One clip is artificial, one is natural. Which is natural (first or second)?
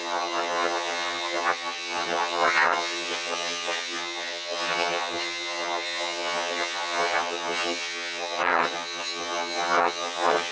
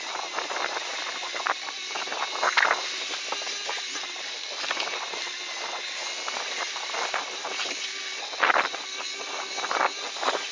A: second